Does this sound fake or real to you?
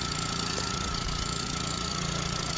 fake